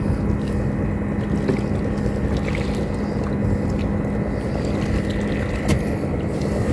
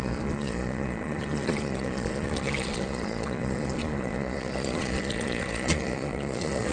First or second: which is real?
first